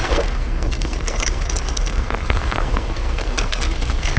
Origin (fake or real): fake